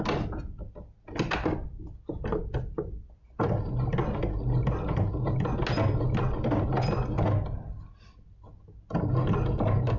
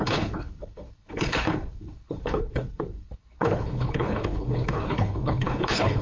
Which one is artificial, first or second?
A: second